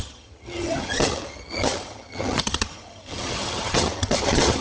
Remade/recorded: remade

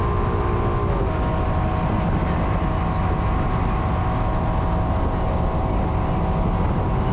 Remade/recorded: recorded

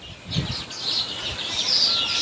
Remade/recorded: recorded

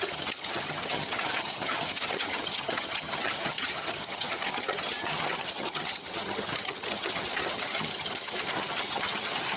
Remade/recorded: remade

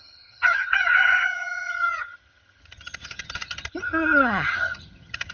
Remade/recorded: remade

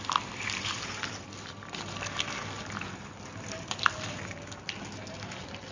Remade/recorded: recorded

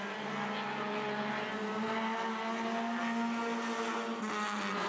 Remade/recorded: recorded